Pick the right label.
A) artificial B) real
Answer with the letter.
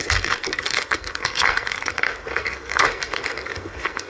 A